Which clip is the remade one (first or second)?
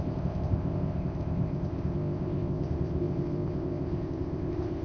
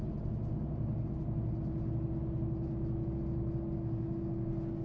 first